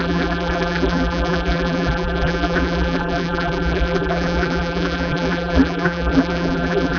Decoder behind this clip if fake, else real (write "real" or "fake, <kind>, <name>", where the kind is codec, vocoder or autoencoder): fake, vocoder, BigVGAN v2